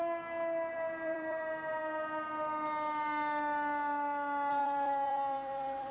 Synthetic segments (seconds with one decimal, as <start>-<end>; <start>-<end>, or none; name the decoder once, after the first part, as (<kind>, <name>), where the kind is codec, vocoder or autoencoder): 0.7-1.4 (vocoder, BigVGAN v2); 4.5-5.9